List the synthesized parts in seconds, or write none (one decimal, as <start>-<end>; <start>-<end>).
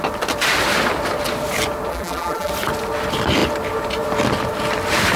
1.9-2.5